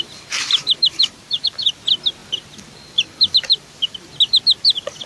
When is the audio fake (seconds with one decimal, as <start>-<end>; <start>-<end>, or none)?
0.6-1.7